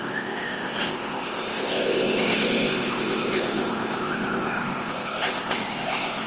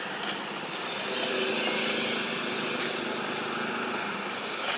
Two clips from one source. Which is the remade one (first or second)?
first